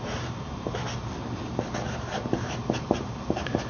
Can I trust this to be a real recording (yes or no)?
no